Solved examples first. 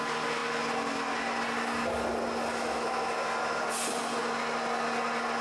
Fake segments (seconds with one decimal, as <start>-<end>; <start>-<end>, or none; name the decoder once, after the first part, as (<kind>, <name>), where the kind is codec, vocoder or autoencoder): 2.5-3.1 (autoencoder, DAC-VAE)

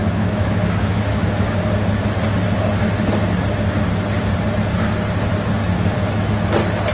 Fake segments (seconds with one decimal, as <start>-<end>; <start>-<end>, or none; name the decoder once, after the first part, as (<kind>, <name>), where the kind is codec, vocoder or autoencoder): 0.0-1.6 (autoencoder, DAC-VAE); 5.6-6.3

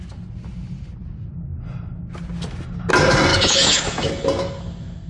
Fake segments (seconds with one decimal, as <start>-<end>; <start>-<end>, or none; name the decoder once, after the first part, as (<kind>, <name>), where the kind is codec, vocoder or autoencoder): 3.3-4.1 (autoencoder, DAC-VAE)

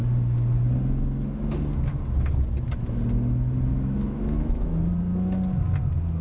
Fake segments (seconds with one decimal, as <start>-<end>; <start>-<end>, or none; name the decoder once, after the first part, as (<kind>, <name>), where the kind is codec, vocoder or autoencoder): 3.7-4.9 (autoencoder, DAC-VAE)

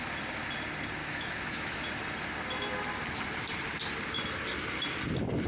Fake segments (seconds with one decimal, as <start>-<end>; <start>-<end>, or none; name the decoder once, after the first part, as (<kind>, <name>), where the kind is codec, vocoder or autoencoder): 1.0-1.8 (autoencoder, DAC-VAE)

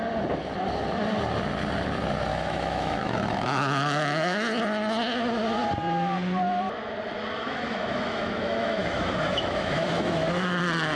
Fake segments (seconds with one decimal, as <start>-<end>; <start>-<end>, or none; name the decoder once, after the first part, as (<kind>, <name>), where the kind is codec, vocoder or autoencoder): 2.3-4.6 (autoencoder, DAC-VAE); 7.4-10.6

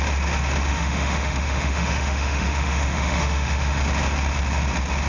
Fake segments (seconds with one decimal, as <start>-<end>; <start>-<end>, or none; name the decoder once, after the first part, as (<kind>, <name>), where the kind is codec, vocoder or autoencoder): 0.7-3.8 (autoencoder, DAC-VAE)